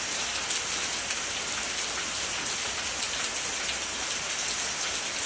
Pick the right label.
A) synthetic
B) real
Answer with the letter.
B